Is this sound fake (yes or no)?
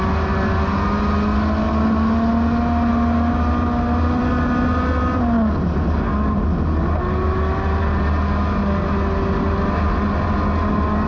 no